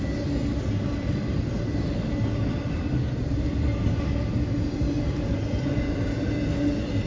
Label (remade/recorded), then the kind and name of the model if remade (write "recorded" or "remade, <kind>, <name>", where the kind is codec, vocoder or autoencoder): recorded